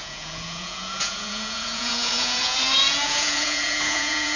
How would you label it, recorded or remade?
remade